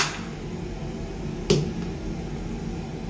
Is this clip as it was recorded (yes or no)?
yes